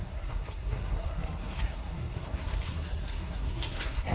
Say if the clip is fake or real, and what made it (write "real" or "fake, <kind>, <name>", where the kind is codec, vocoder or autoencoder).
fake, codec, SNAC